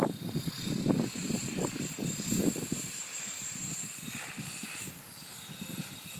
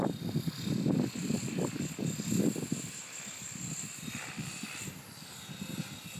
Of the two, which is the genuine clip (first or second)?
second